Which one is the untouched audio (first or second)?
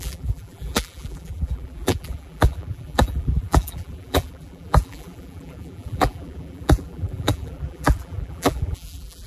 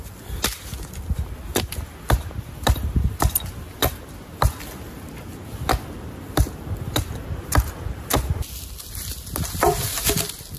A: second